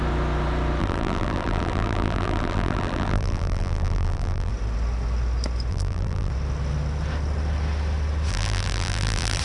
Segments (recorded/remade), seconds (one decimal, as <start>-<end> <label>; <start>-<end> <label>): 0.0-0.8 recorded; 0.8-4.5 remade; 4.5-5.7 recorded; 5.7-6.3 remade; 6.3-8.3 recorded; 8.3-9.4 remade